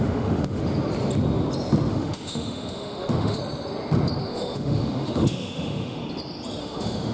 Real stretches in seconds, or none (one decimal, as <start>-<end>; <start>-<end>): 0.6-1.9; 3.4-4.2; 6.0-6.6

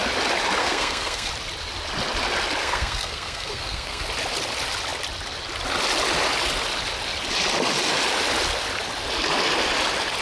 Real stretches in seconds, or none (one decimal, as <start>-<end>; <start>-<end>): 0.0-0.6; 1.3-2.6; 4.0-10.2

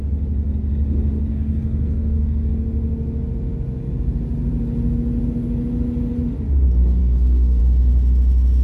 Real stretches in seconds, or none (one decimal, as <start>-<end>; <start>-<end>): 0.0-1.3; 2.5-7.0; 7.6-8.6

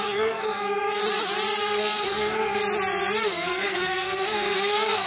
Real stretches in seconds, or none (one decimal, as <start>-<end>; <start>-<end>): 1.0-1.6; 2.6-3.2

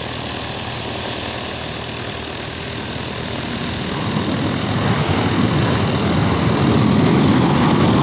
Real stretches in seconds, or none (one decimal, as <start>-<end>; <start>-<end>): 0.0-8.0

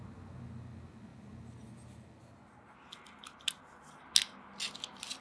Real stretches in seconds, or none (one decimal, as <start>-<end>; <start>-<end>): 0.0-5.2

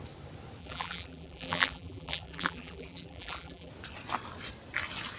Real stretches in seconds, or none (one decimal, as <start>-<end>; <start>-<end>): 0.0-0.6; 3.7-5.2